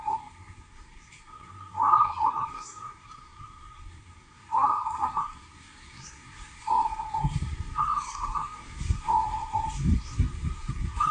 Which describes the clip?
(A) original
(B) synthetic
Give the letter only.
B